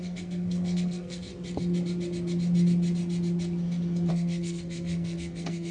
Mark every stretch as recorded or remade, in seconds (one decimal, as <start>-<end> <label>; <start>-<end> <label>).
0.0-1.3 remade; 1.3-4.1 recorded; 4.1-5.7 remade